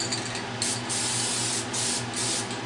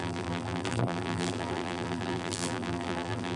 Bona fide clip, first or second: first